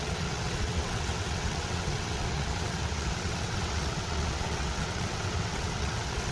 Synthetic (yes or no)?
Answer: yes